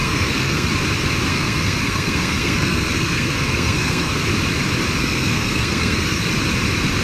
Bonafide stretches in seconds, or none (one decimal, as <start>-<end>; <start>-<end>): 0.7-1.3; 4.3-5.0; 6.3-7.0

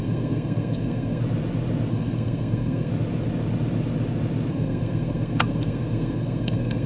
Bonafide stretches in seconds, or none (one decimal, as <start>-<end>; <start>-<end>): 1.2-1.9; 2.9-4.5